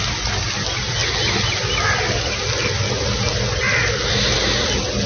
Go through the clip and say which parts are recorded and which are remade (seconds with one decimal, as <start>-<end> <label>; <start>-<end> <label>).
0.0-5.1 recorded